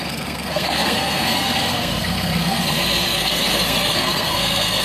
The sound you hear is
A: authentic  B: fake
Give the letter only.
B